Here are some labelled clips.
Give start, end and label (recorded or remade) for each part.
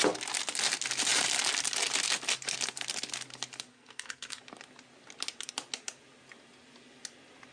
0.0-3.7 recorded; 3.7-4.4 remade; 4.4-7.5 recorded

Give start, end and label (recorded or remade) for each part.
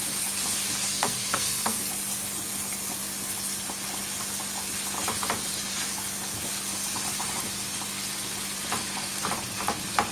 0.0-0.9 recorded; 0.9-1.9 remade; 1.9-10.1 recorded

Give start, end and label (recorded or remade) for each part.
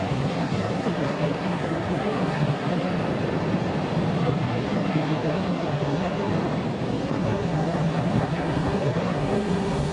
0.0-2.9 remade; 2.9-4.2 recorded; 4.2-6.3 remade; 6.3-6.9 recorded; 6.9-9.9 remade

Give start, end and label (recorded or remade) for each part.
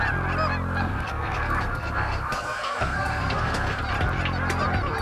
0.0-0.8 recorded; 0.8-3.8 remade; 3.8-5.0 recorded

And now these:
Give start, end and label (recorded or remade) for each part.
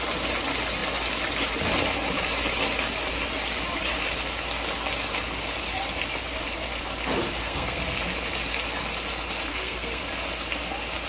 0.0-7.4 recorded; 7.4-8.0 remade; 8.0-9.5 recorded; 9.5-10.0 remade; 10.0-11.1 recorded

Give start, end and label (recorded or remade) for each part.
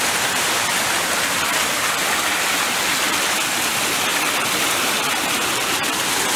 0.0-6.4 recorded